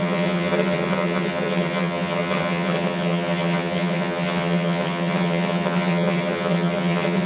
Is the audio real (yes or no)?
no